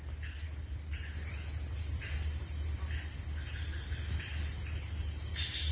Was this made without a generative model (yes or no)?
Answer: yes